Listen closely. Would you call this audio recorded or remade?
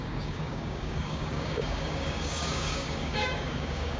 remade